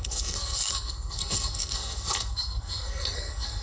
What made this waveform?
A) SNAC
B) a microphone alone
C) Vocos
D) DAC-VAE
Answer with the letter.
A